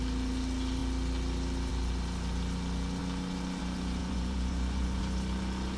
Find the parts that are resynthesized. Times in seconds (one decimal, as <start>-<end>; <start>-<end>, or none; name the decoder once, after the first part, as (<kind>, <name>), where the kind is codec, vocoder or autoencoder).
4.0-5.0 (vocoder, Vocos)

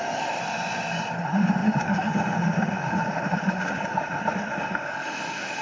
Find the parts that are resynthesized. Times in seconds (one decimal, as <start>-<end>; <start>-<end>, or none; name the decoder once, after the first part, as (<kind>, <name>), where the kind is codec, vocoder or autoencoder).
0.0-0.4 (autoencoder, DAC-VAE); 1.2-5.6

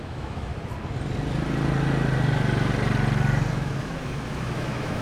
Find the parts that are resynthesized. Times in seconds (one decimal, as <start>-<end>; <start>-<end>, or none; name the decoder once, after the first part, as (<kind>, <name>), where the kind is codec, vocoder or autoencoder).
0.0-0.5 (autoencoder, DAC-VAE); 3.5-5.0